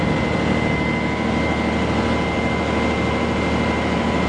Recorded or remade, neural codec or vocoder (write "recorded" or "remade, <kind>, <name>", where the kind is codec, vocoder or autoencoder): recorded